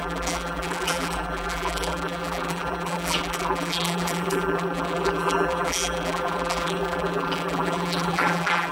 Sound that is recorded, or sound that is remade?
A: remade